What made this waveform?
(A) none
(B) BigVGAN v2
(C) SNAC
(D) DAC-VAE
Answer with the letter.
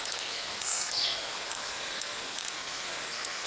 C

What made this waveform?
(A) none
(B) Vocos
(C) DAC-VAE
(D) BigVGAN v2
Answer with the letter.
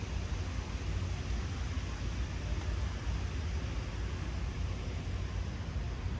A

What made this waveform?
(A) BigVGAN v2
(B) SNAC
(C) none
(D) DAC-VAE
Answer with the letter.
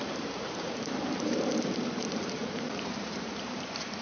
A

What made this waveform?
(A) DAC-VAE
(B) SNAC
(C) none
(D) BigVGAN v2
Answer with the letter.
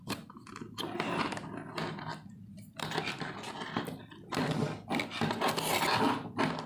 C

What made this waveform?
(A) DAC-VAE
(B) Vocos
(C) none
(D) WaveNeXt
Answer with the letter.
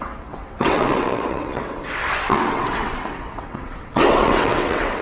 D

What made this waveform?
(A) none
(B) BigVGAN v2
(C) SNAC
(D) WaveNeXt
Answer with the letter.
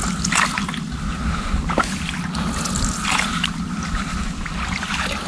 A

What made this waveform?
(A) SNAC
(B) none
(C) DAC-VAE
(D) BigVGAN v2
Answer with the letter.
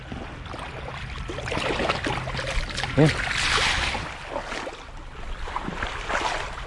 B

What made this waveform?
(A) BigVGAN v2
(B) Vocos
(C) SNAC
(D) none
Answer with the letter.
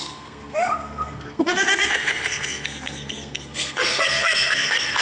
C